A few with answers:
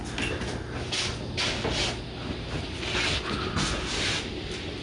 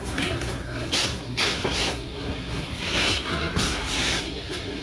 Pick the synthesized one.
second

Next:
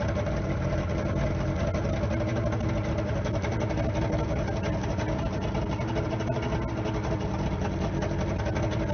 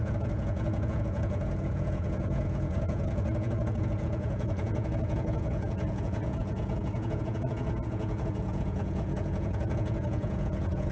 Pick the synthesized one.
second